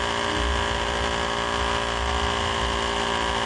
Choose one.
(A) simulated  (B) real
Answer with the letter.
B